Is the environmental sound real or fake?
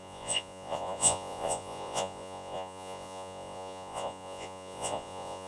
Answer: fake